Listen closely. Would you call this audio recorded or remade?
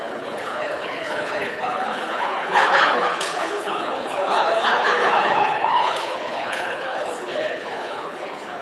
remade